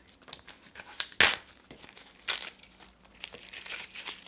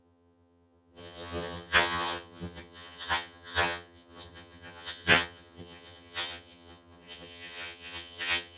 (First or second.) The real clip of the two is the first